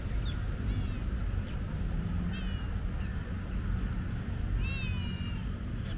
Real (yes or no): yes